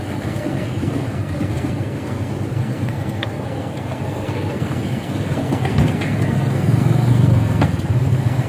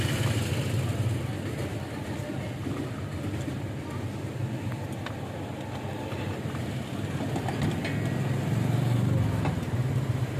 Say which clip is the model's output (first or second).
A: first